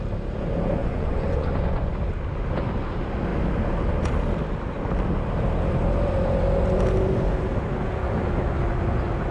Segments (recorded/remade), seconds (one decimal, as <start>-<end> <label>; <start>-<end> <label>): 0.0-0.8 recorded; 0.8-1.9 remade; 1.9-9.3 recorded